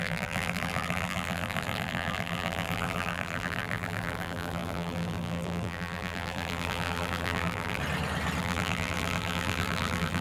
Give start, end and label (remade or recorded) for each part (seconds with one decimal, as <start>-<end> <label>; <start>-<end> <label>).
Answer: 0.0-7.8 remade; 7.8-8.4 recorded; 8.4-10.2 remade